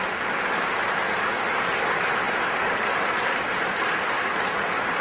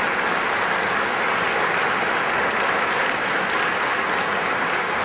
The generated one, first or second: first